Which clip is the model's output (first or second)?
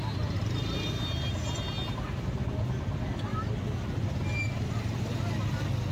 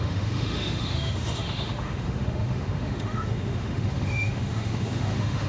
second